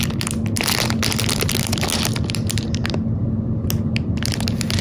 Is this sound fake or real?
real